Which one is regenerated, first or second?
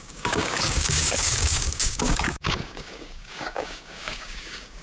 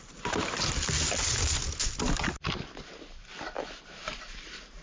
first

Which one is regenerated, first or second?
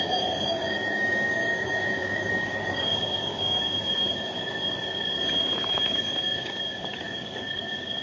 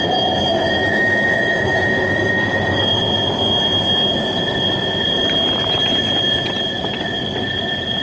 first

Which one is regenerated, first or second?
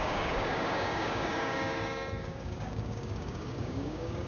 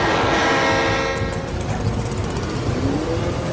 first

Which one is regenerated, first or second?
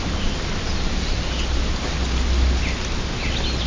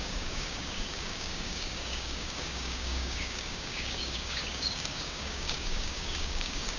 second